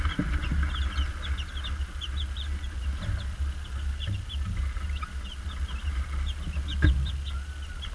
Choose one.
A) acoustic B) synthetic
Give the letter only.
A